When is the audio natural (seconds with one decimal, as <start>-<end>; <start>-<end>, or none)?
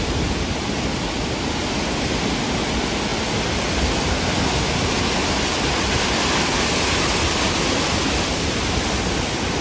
0.0-9.6